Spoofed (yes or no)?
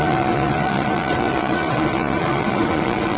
yes